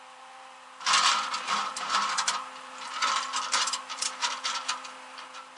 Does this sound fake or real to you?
fake